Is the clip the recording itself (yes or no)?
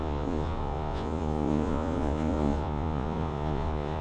no